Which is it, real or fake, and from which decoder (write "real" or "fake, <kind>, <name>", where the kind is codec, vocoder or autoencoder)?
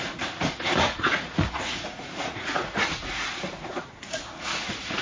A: fake, vocoder, Vocos